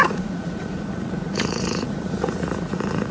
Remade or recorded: remade